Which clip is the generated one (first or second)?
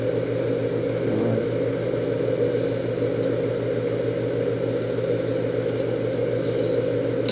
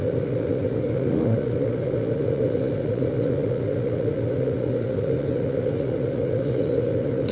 second